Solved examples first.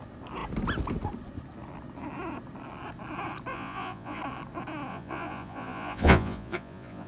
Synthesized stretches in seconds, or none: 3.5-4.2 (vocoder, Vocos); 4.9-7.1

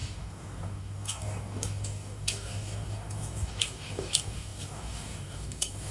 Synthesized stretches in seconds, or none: 0.0-5.9 (codec, DAC)